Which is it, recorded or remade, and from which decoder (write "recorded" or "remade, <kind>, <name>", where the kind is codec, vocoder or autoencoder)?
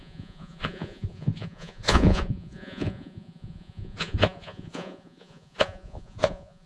remade, vocoder, Vocos